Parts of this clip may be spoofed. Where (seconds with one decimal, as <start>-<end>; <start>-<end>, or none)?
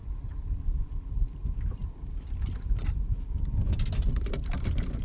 0.0-1.8